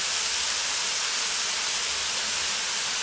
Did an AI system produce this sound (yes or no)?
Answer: no